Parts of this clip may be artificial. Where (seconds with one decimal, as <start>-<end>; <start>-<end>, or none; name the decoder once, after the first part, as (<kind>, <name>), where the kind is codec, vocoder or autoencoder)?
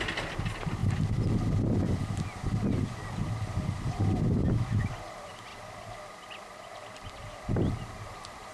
none